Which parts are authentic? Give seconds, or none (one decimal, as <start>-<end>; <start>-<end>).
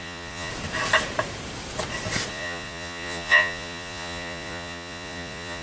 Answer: 0.5-2.3